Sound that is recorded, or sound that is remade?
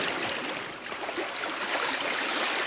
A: recorded